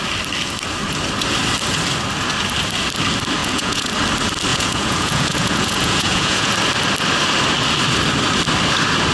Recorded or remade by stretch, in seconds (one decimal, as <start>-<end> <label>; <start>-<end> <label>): 0.0-3.4 recorded; 3.4-3.9 remade; 3.9-4.5 recorded; 4.5-6.5 remade; 6.5-9.1 recorded